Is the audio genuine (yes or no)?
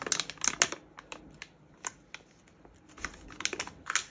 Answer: yes